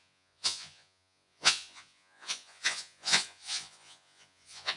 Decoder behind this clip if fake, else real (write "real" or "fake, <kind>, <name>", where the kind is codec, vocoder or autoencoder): fake, vocoder, Vocos